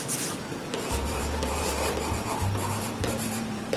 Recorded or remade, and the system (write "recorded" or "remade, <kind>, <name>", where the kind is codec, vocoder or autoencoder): remade, vocoder, BigVGAN v2